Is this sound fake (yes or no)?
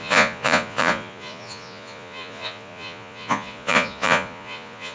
yes